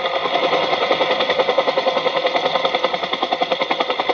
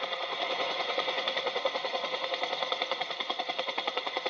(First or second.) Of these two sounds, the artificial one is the second